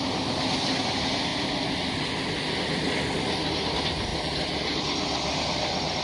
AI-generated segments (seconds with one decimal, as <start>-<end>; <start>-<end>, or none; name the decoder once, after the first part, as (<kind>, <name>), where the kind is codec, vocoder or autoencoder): none